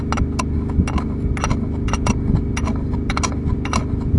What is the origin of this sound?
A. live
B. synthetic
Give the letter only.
A